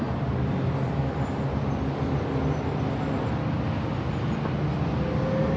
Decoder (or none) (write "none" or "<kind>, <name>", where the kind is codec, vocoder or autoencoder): none